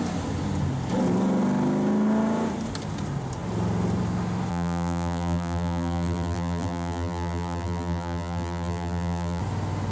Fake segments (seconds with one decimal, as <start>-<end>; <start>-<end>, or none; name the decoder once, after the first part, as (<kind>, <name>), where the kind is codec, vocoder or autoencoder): 4.5-9.4 (vocoder, BigVGAN v2)